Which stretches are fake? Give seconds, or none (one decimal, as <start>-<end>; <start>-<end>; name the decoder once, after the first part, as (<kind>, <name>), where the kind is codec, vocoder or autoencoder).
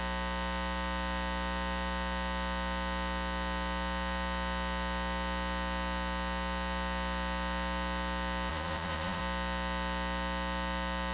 8.5-9.2 (vocoder, Vocos)